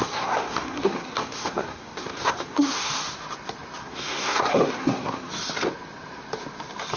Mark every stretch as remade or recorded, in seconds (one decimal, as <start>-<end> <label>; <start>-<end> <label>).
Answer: 0.0-2.9 remade; 2.9-3.8 recorded; 3.8-5.3 remade; 5.3-7.0 recorded